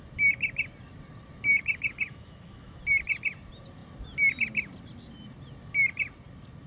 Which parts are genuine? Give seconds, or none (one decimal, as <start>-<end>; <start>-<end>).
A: 0.0-1.5; 2.8-6.7